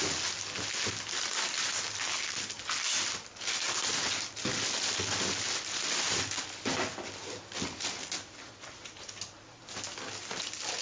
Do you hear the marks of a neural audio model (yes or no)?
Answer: no